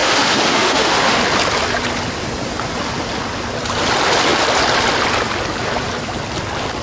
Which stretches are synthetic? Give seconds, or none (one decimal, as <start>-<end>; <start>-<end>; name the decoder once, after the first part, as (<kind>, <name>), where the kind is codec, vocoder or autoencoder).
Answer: 0.0-1.2 (autoencoder, DAC-VAE)